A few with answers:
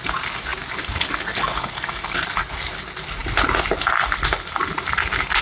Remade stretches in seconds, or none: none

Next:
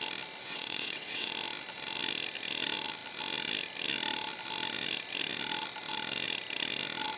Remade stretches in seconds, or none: 0.4-1.3 (vocoder, WaveNeXt)

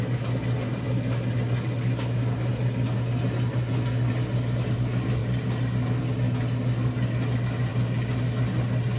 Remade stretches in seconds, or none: none

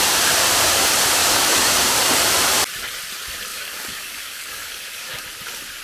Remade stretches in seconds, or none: 1.2-1.7 (codec, DAC); 3.5-5.2

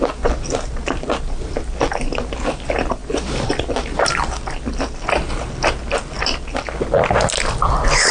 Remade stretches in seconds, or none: none

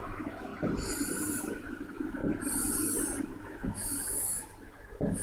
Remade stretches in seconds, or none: 0.0-0.5 (autoencoder, DAC-VAE); 1.4-2.2; 3.2-5.2

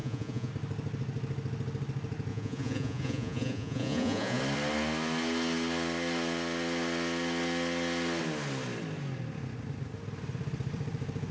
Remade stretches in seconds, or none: 0.0-0.5 (vocoder, Vocos); 2.3-4.4

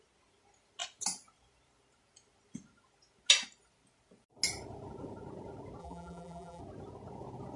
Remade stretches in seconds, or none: 5.8-6.6 (vocoder, BigVGAN v2)